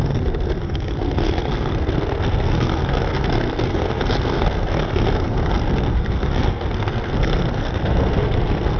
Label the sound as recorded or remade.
remade